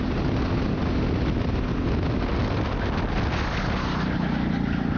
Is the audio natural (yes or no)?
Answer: yes